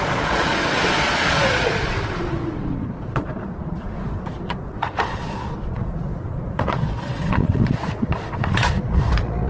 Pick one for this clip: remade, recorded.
remade